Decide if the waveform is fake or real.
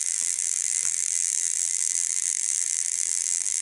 fake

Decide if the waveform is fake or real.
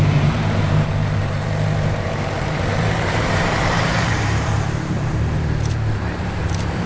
fake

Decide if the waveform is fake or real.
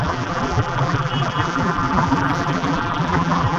fake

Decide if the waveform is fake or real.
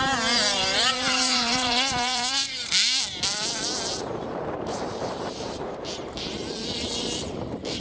fake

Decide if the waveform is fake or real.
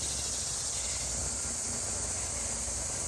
real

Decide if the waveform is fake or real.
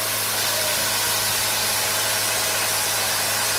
real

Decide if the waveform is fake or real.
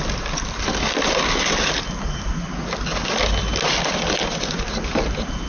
real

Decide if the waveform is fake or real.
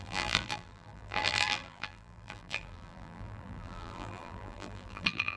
fake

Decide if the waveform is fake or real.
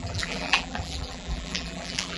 fake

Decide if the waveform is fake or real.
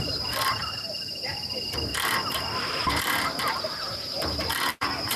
fake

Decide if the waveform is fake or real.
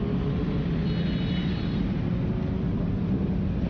real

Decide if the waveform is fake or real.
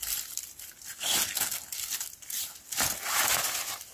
real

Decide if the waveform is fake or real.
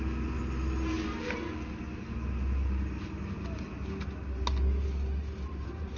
real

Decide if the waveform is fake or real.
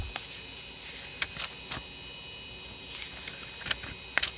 real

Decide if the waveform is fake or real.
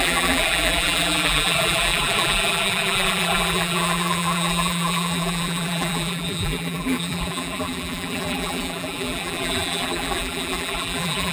fake